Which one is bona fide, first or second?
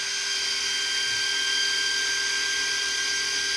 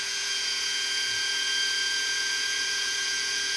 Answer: first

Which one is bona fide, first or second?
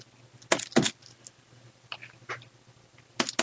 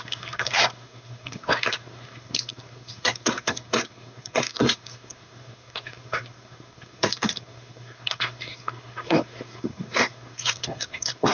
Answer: first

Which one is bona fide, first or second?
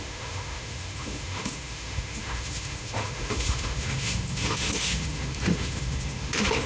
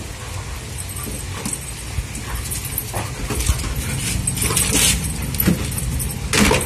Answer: second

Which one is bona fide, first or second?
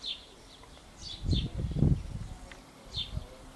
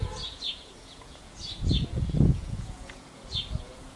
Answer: first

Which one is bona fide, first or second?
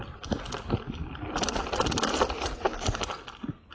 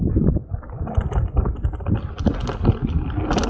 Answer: second